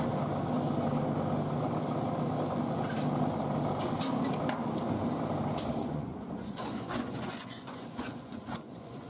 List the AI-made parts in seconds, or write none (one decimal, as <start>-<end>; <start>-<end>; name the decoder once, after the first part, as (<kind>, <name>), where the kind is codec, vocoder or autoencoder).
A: 5.8-9.1 (vocoder, Vocos)